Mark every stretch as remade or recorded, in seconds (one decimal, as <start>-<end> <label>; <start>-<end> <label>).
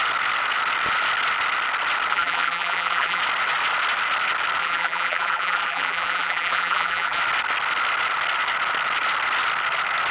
0.0-2.1 recorded; 2.1-3.2 remade; 3.2-4.6 recorded; 4.6-7.2 remade; 7.2-10.1 recorded